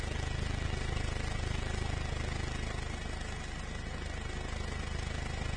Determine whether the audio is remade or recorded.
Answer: recorded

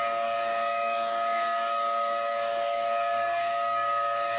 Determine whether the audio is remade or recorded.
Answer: remade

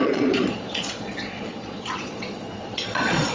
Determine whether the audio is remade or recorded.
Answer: remade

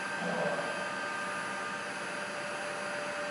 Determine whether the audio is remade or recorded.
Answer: recorded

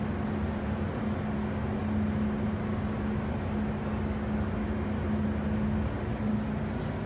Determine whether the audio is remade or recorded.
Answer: recorded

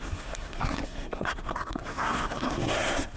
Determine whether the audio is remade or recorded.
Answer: remade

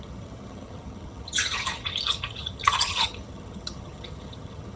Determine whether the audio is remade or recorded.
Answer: remade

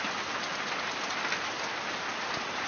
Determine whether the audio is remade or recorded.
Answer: recorded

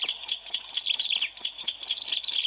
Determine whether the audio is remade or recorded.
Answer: recorded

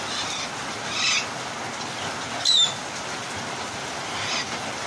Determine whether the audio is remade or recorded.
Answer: recorded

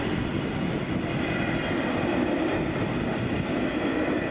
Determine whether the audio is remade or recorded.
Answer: recorded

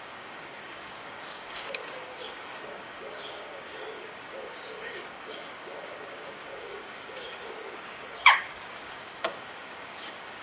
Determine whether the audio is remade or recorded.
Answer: remade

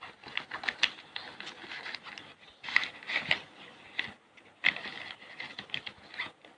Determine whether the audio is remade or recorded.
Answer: recorded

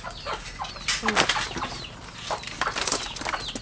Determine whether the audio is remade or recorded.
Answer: recorded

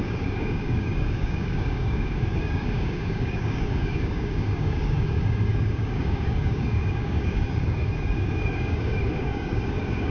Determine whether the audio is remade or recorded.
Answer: remade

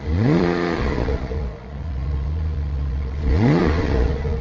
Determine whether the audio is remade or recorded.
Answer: remade